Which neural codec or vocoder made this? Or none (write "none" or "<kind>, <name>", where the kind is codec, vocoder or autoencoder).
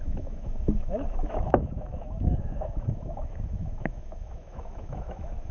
autoencoder, DAC-VAE